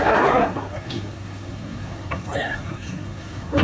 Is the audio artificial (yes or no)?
yes